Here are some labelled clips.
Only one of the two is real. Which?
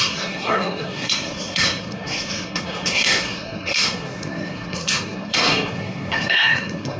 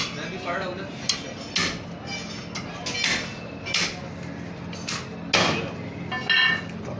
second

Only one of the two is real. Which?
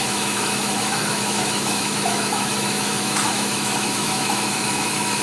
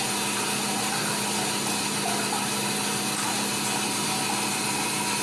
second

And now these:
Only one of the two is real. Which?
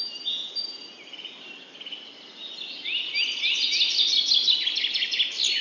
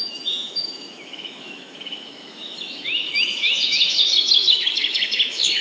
first